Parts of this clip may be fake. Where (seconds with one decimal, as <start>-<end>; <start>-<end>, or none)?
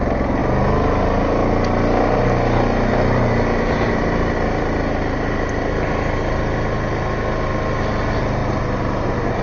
8.4-9.4